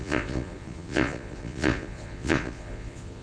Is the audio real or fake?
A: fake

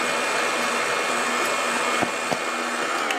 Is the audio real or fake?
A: real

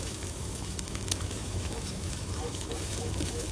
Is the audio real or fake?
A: fake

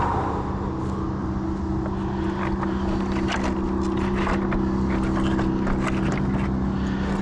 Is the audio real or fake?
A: real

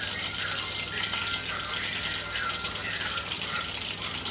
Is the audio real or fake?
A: real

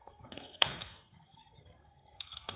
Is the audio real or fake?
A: fake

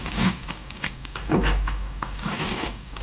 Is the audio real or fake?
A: fake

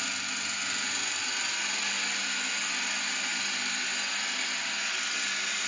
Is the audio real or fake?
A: real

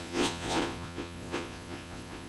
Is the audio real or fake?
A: fake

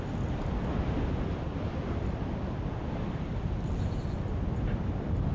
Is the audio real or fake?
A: real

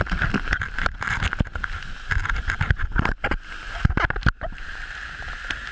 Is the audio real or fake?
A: real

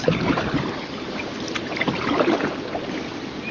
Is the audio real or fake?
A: fake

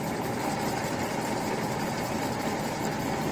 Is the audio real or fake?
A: real